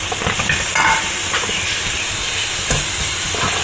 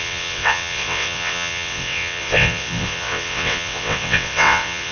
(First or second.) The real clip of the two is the first